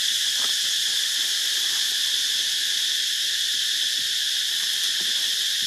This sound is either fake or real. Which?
real